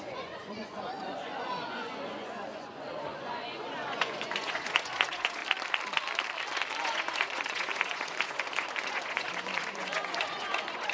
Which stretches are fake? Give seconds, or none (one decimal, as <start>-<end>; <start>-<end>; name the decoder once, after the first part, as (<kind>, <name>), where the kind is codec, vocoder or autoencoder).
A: 0.0-5.4 (vocoder, Vocos); 6.8-10.9